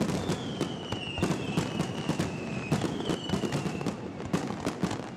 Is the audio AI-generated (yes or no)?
no